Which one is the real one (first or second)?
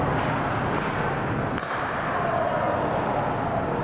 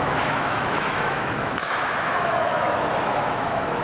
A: first